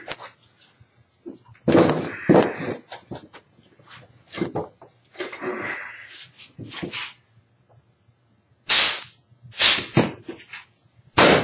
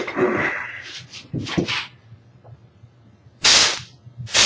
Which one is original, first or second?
first